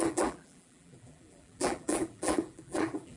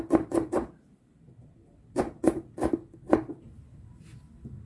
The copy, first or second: first